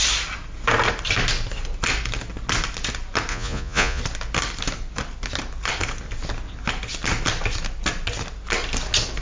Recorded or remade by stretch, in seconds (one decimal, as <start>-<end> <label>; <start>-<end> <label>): 0.0-3.3 recorded; 3.3-4.0 remade; 4.0-9.2 recorded